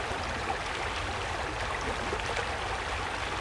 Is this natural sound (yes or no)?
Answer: yes